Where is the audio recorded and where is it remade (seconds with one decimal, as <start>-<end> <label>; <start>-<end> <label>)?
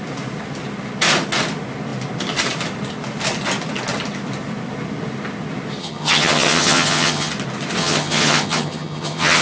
0.0-5.8 recorded; 5.8-7.3 remade; 7.3-7.8 recorded; 7.8-9.4 remade